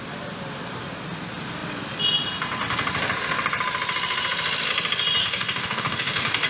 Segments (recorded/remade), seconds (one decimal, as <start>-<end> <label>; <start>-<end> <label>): 0.0-5.2 recorded; 5.2-6.5 remade